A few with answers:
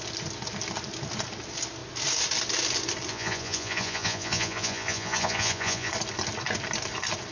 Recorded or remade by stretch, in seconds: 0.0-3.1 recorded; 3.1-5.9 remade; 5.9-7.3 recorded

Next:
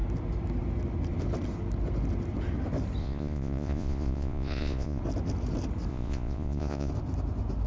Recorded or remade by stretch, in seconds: 0.0-3.0 recorded; 3.0-5.0 remade; 5.0-5.9 recorded; 5.9-6.9 remade; 6.9-7.7 recorded

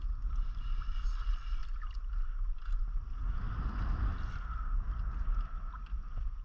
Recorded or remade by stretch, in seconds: 0.0-6.4 recorded

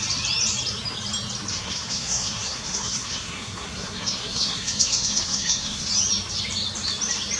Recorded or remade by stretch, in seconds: 0.0-1.5 recorded; 1.5-5.9 remade; 5.9-7.4 recorded

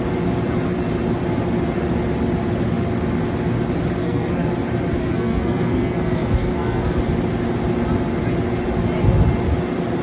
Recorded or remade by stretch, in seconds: 0.0-4.0 recorded; 4.0-4.5 remade; 4.5-5.0 recorded; 5.0-7.0 remade; 7.0-10.0 recorded